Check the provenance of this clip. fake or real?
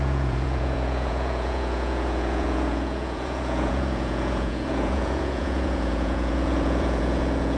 fake